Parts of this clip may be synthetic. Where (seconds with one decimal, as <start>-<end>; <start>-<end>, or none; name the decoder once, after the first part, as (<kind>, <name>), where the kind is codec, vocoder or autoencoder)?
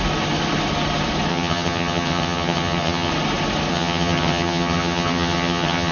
1.3-3.1 (vocoder, HiFi-GAN); 3.7-5.9